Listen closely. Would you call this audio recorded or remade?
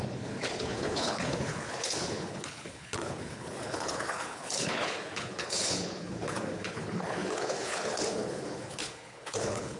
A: remade